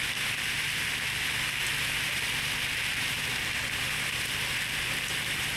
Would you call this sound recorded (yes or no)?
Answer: yes